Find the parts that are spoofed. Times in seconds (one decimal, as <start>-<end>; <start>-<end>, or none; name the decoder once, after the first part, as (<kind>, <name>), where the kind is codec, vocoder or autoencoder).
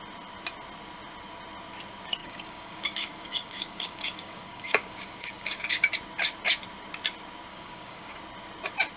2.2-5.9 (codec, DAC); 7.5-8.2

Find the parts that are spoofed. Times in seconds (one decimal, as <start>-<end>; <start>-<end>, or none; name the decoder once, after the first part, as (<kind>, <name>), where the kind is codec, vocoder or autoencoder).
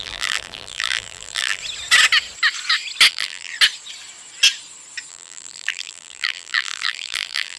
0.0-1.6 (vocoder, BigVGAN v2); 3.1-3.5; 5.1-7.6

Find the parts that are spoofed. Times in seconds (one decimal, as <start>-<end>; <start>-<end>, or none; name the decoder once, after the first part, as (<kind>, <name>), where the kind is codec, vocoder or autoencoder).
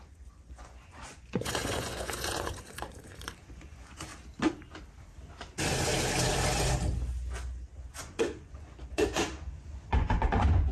0.0-4.1 (vocoder, Vocos); 7.8-10.7